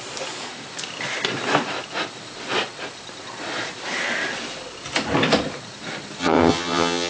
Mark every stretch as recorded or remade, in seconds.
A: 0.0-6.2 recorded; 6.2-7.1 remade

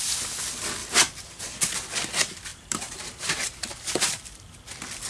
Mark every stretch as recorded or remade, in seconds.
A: 0.0-0.8 recorded; 0.8-1.6 remade; 1.6-2.5 recorded; 2.5-4.6 remade; 4.6-5.1 recorded

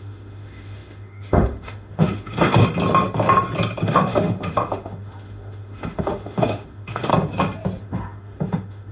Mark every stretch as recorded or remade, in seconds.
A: 0.0-2.6 remade; 2.6-3.8 recorded; 3.8-7.1 remade; 7.1-7.8 recorded; 7.8-8.9 remade

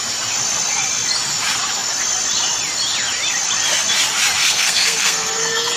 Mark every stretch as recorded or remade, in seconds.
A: 0.0-4.4 recorded; 4.4-5.8 remade